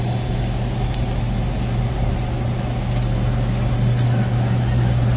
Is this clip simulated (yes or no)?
no